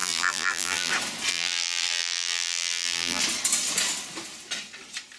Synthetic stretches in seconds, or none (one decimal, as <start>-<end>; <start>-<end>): 0.0-0.9; 1.3-3.2